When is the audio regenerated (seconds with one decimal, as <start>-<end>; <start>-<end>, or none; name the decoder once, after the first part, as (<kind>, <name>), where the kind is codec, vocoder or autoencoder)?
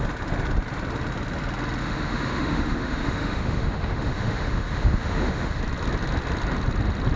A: 1.8-5.6 (autoencoder, DAC-VAE)